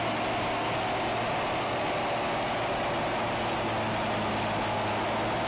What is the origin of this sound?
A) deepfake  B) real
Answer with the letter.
B